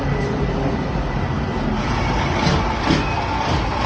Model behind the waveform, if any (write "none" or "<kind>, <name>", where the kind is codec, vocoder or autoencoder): none